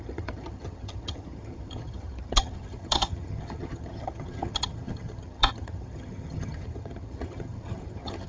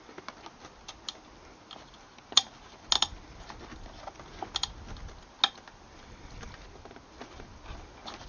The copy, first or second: first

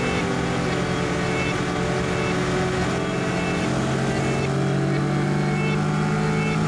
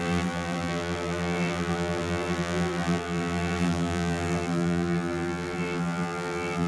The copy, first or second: second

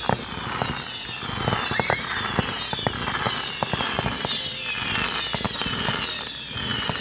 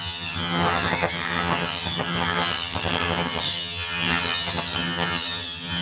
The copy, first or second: second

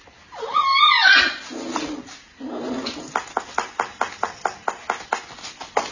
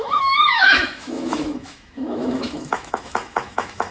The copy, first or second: second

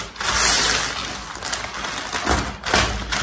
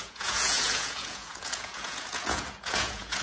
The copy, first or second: second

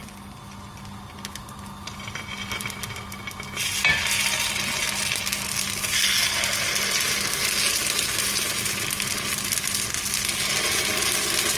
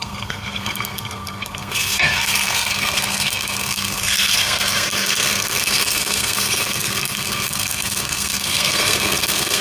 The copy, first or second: second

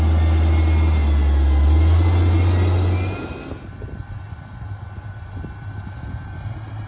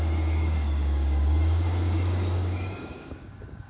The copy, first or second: second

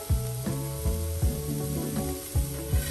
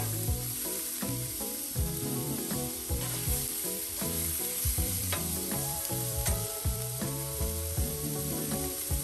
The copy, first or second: second